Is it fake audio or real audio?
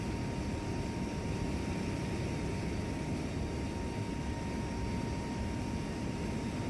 real